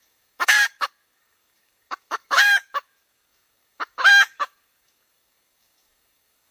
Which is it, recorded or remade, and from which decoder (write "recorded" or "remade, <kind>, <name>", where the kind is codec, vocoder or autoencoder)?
remade, codec, DAC